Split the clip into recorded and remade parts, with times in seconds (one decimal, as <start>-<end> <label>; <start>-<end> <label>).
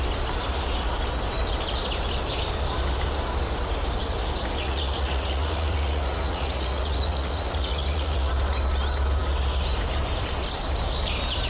0.0-4.6 recorded; 4.6-8.3 remade; 8.3-11.5 recorded